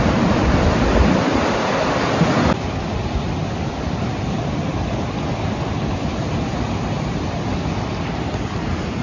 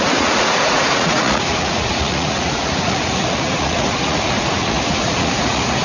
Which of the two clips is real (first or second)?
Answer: first